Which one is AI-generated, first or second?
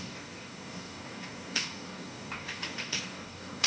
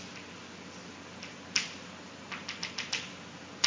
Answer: first